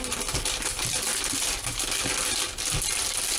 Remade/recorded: recorded